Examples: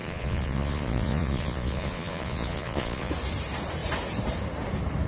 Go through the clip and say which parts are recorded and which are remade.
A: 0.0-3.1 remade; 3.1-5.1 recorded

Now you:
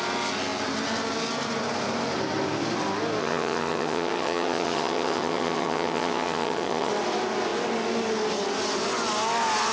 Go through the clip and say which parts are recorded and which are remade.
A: 0.0-3.2 recorded; 3.2-6.9 remade; 6.9-9.7 recorded

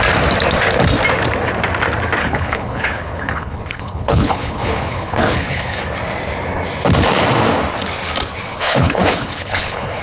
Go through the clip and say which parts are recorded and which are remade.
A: 0.0-2.2 recorded; 2.2-5.8 remade; 5.8-8.5 recorded; 8.5-10.0 remade

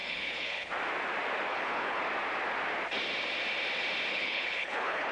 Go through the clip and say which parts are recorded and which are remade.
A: 0.0-0.7 remade; 0.7-1.5 recorded; 1.5-2.0 remade; 2.0-4.1 recorded; 4.1-5.1 remade

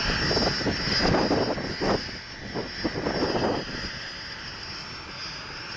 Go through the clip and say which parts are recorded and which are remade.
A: 0.0-5.8 recorded

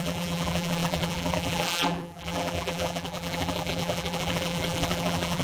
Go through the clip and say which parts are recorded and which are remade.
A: 0.0-5.4 remade

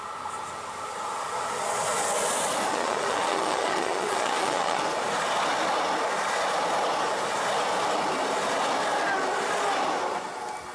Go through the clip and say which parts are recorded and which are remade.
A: 0.0-2.7 recorded; 2.7-4.8 remade; 4.8-10.7 recorded

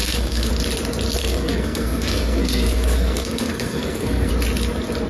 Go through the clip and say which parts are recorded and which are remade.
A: 0.0-0.5 remade; 0.5-1.2 recorded; 1.2-4.3 remade; 4.3-5.1 recorded